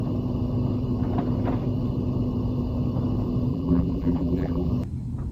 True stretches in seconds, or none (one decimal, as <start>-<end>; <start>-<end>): 0.0-3.5; 4.7-5.3